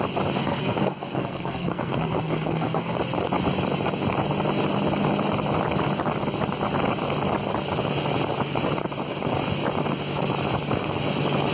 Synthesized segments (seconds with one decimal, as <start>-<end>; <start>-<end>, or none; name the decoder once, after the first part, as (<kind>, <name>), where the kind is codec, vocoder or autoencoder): 0.4-3.0 (codec, SNAC)